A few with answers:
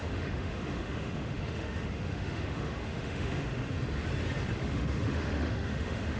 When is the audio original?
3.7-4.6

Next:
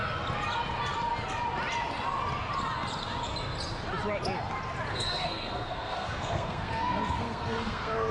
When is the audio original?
0.0-4.9